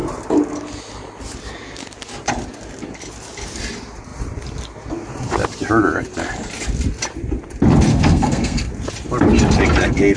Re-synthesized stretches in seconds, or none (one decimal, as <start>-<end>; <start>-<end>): 7.9-8.7

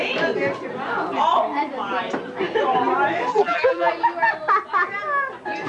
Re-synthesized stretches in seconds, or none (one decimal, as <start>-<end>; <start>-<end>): 3.3-3.9

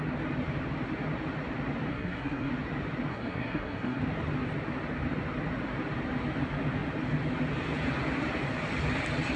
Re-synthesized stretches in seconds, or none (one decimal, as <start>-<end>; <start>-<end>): 1.9-2.5; 3.1-4.0